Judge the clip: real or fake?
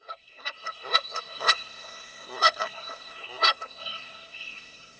fake